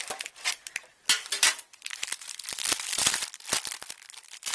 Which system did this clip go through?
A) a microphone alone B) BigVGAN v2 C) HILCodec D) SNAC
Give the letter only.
A